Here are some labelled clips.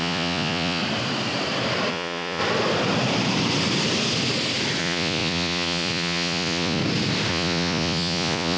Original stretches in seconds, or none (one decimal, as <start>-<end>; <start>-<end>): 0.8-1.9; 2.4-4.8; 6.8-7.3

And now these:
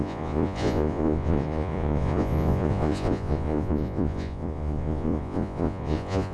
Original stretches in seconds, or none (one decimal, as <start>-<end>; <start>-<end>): none

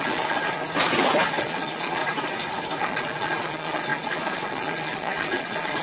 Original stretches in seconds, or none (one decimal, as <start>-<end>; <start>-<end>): 0.6-1.4; 2.0-2.8

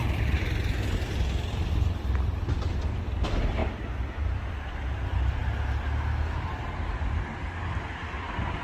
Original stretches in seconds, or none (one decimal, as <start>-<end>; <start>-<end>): 0.0-8.6

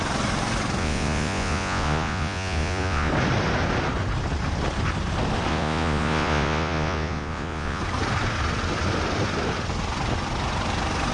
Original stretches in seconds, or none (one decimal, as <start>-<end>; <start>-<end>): 0.0-0.8; 3.1-5.5; 7.8-11.1

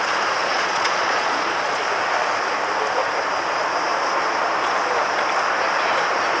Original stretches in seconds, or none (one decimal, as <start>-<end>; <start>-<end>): 0.0-0.4; 1.8-6.4

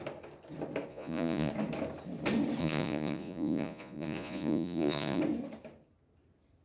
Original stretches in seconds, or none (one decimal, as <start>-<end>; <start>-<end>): 0.0-0.9; 1.5-2.6; 5.2-6.6